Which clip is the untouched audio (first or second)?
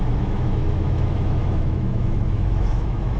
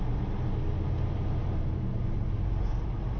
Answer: second